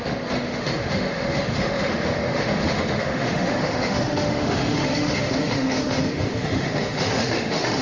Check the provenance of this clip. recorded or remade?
remade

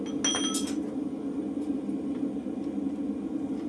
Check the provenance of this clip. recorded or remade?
recorded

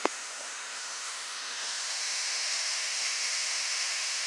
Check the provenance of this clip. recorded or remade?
remade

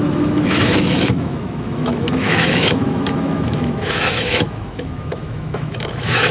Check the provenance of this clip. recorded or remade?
remade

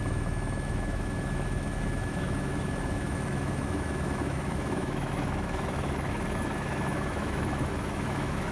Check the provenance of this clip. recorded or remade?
remade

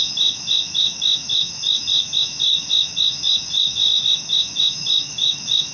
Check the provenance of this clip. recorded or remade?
remade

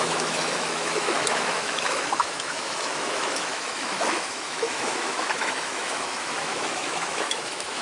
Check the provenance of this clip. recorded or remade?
remade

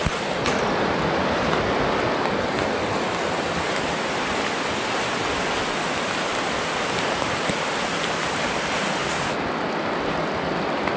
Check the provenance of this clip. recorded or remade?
recorded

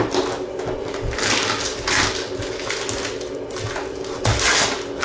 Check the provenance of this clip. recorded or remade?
recorded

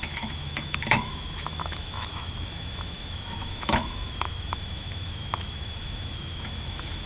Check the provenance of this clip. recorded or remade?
remade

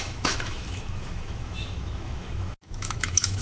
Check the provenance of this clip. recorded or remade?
remade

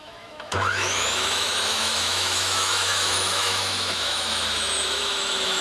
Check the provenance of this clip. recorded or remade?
remade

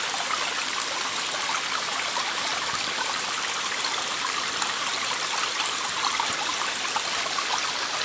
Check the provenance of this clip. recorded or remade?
recorded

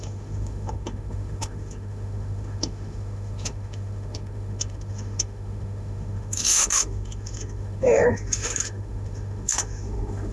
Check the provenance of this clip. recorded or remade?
remade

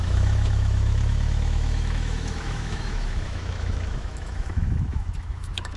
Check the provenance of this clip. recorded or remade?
remade